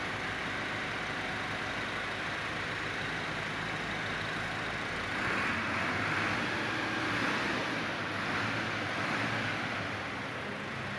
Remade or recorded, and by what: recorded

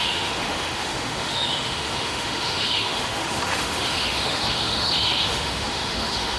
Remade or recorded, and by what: remade, autoencoder, DAC-VAE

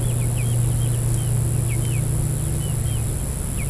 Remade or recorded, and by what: recorded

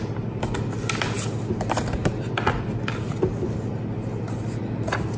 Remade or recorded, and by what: recorded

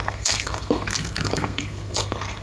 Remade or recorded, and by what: remade, codec, SNAC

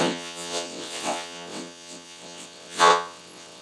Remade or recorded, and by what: remade, vocoder, WaveNeXt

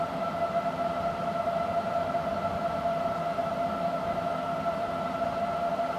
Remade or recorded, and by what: recorded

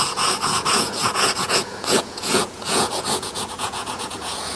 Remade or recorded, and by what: remade, vocoder, Vocos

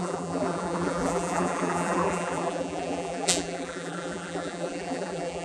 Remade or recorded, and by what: remade, vocoder, BigVGAN v2